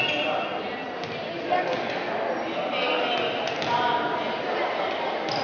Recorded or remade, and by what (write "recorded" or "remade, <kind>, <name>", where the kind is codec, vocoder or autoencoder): recorded